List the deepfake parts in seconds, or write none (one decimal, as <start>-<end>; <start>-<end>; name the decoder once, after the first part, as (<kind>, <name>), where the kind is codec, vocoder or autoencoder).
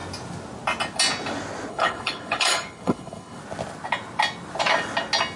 1.7-3.4 (codec, HILCodec)